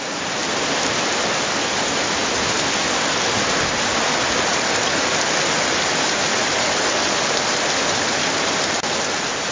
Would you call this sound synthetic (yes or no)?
no